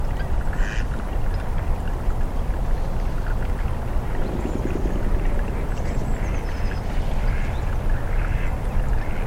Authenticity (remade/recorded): recorded